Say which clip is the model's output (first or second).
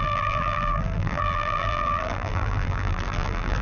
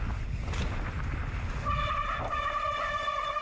first